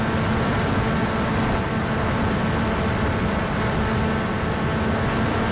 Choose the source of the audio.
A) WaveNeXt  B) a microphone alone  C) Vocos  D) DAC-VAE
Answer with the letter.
B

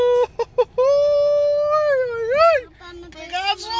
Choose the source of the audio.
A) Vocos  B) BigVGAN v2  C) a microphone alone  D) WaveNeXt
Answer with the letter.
C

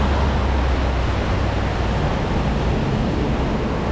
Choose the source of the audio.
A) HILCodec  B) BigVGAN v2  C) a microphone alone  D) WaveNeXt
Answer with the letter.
C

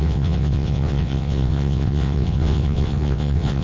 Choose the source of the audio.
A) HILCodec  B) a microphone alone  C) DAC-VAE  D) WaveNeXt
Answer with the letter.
D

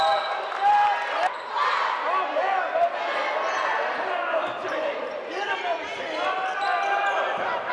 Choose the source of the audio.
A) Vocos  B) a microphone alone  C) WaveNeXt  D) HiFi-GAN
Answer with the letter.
B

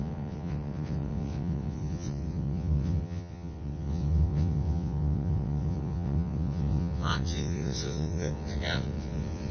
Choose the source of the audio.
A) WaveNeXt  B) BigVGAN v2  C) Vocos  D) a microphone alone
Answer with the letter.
A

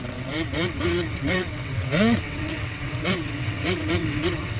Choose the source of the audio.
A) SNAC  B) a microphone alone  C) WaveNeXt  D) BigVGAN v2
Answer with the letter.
C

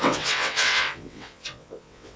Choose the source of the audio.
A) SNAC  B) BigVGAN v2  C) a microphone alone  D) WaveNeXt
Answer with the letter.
D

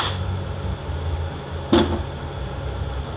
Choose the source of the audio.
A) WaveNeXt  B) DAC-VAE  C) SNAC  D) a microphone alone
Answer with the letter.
D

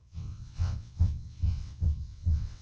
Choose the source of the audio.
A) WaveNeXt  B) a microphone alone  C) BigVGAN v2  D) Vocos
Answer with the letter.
A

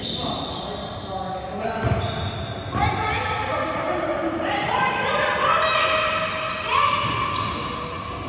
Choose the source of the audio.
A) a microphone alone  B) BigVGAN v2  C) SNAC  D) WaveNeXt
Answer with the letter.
A